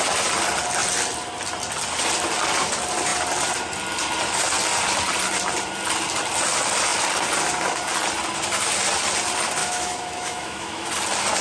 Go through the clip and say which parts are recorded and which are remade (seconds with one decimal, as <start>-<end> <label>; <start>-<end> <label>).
0.0-9.6 recorded; 9.6-10.9 remade; 10.9-11.4 recorded